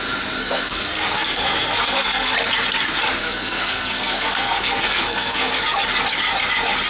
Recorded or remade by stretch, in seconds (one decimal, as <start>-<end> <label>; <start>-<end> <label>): 0.0-0.4 recorded; 0.4-2.3 remade; 2.3-3.2 recorded; 3.2-5.6 remade; 5.6-6.9 recorded